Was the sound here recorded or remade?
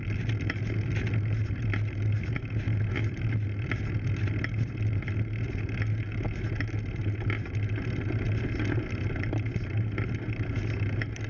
recorded